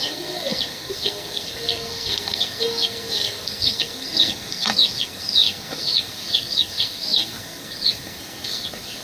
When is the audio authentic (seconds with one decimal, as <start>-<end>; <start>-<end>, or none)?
none